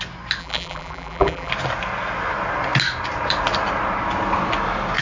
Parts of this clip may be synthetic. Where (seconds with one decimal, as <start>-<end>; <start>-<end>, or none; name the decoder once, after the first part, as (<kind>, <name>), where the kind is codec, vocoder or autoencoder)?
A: 0.4-1.5 (vocoder, BigVGAN v2)